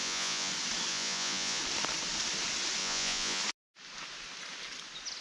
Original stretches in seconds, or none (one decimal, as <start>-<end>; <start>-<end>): 0.5-0.9; 1.6-2.8; 3.4-5.2